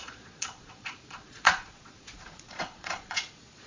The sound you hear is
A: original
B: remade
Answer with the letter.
B